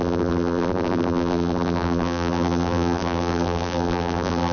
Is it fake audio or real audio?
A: fake